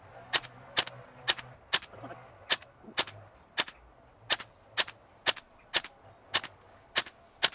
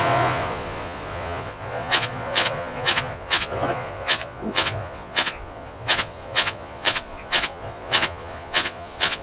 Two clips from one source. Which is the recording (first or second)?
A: first